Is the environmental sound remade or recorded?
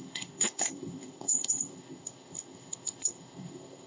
remade